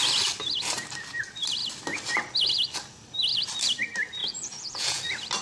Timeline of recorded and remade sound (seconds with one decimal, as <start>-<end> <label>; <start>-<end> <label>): 0.0-4.2 recorded; 4.2-5.0 remade; 5.0-5.4 recorded